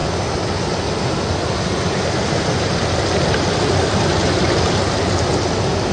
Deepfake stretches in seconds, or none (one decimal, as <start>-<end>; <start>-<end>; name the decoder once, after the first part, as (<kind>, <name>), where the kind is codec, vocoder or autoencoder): none